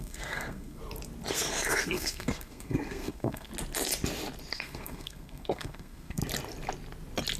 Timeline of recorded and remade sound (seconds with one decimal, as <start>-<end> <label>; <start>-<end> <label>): 0.0-0.8 remade; 0.8-1.3 recorded; 1.3-3.5 remade; 3.5-4.5 recorded; 4.5-6.2 remade; 6.2-7.4 recorded